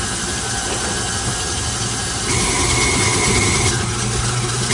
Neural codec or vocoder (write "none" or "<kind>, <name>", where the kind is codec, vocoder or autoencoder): none